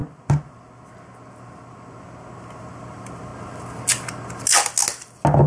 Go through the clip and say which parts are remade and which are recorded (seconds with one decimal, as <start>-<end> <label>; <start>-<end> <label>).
0.0-2.6 recorded; 2.6-3.3 remade; 3.3-5.5 recorded